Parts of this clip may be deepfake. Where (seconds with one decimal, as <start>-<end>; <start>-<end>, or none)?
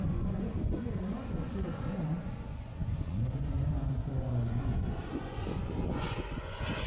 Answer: 0.0-6.9